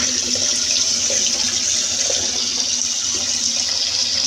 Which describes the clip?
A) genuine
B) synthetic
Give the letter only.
A